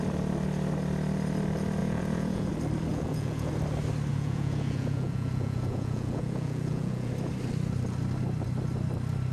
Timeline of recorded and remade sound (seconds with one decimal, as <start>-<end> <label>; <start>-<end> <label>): 0.0-1.8 recorded; 1.8-2.5 remade; 2.5-2.9 recorded; 2.9-3.5 remade; 3.5-4.1 recorded; 4.1-7.1 remade; 7.1-9.3 recorded